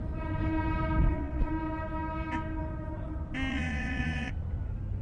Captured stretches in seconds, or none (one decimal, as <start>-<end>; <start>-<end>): 0.0-1.0; 1.5-3.5; 4.3-5.0